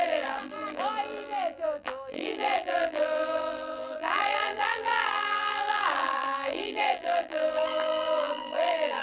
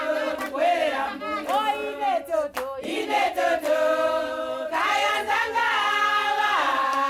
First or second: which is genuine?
second